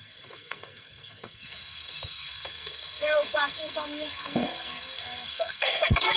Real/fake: fake